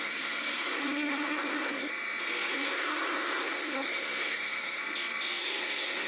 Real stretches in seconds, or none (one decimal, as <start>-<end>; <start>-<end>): 1.9-2.5; 4.8-5.4